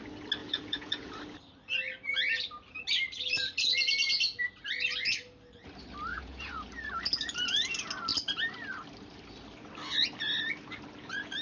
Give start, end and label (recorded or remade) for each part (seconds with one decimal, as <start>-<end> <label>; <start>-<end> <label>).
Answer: 0.0-0.4 recorded; 0.4-1.1 remade; 1.1-6.1 recorded; 6.1-6.7 remade; 6.7-11.4 recorded